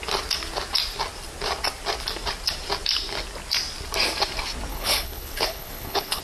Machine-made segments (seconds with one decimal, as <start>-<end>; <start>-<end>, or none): 4.7-6.2

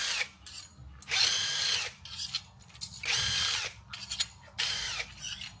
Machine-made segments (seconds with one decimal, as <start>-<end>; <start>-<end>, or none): none

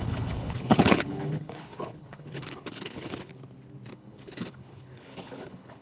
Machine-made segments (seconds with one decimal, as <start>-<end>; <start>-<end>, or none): 0.0-3.3; 3.9-5.8

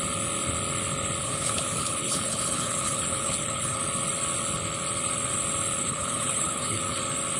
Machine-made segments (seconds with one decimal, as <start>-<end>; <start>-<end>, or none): 1.2-3.8; 5.8-7.0

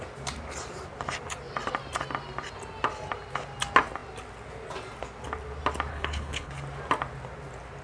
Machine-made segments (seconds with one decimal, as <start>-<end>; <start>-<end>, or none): 5.9-6.5

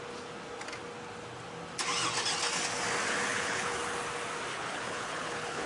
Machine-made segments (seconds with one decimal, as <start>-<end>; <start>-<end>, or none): 3.3-3.8; 4.5-5.7

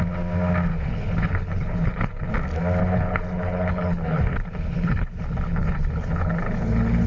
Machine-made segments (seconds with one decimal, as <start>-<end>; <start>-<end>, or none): 0.7-2.3; 2.8-7.1

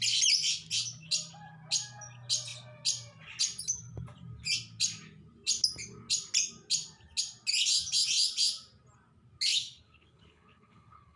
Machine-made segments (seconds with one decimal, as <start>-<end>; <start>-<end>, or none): 9.5-11.2